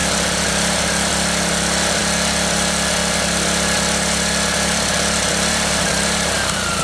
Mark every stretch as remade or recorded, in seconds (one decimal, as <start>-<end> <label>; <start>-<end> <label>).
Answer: 0.0-6.8 recorded